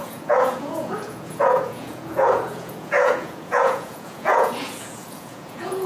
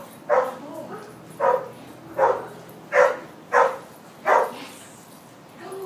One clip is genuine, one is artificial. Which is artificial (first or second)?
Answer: first